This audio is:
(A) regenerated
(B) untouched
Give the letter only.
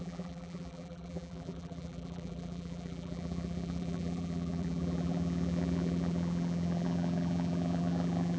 A